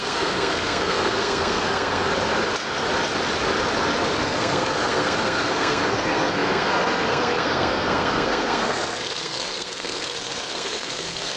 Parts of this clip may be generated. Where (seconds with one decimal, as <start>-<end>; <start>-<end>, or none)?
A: 0.0-2.1; 4.2-11.4